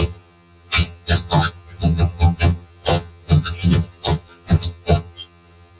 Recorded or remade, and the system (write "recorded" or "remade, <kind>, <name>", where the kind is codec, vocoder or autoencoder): remade, vocoder, HiFi-GAN